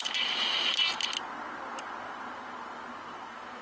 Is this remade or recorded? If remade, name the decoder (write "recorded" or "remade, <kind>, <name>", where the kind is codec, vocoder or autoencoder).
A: recorded